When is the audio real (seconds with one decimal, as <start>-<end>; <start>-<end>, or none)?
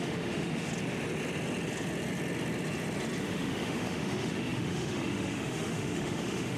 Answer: 0.7-3.2